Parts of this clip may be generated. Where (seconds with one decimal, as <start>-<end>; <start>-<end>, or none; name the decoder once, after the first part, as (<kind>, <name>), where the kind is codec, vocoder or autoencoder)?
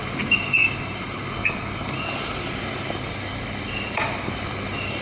none